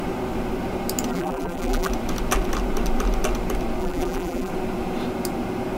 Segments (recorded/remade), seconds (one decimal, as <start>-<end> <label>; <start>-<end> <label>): 0.0-1.1 recorded; 1.1-1.9 remade; 1.9-3.8 recorded; 3.8-4.5 remade; 4.5-5.8 recorded